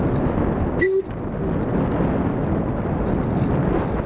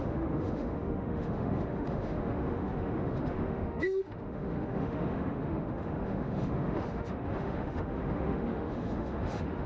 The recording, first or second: first